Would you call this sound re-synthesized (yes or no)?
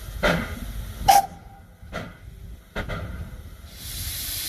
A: no